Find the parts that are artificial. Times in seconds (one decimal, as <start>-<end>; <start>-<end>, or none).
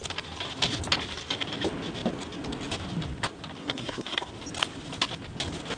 3.6-4.3